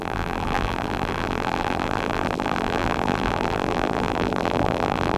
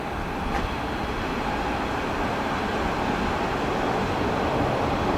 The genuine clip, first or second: second